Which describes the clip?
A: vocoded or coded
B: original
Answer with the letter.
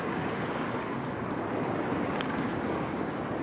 A